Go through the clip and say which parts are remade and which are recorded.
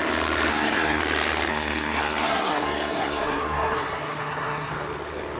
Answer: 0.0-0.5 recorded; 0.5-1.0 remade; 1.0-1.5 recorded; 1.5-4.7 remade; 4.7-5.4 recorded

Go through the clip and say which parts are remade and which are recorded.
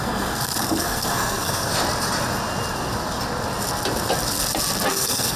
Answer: 0.0-1.7 remade; 1.7-4.9 recorded; 4.9-5.4 remade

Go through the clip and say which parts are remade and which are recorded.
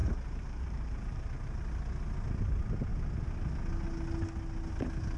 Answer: 0.0-1.3 remade; 1.3-5.2 recorded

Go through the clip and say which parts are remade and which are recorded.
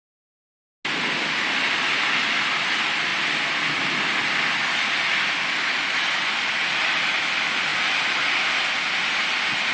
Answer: 0.0-9.7 recorded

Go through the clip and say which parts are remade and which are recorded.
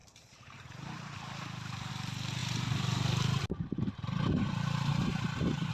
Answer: 0.0-1.9 remade; 1.9-2.4 recorded; 2.4-5.7 remade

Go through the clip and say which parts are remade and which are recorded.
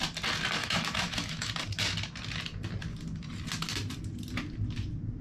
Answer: 0.0-0.6 recorded; 0.6-1.5 remade; 1.5-5.2 recorded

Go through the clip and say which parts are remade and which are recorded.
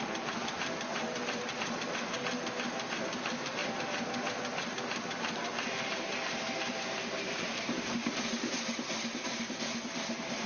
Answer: 0.0-0.9 recorded; 0.9-2.1 remade; 2.1-5.5 recorded; 5.5-8.5 remade; 8.5-10.5 recorded